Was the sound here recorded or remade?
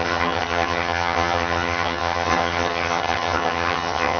remade